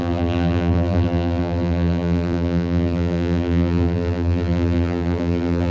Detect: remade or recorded remade